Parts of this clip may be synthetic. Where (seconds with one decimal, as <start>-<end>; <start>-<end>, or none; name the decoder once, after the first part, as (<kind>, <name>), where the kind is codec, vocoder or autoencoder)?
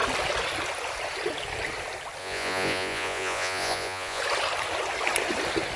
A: 2.2-4.2 (vocoder, Vocos)